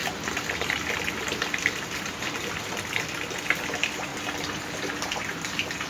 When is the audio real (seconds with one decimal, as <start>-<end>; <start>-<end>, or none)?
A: 0.0-5.9